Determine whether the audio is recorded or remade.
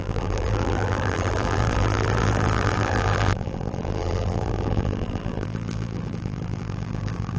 remade